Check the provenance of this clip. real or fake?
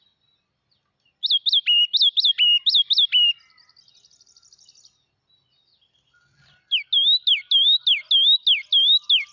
real